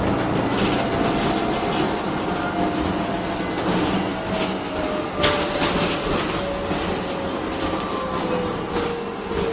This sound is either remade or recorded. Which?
recorded